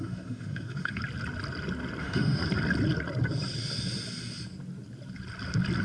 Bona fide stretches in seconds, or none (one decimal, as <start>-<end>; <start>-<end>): 1.0-2.0; 2.4-5.8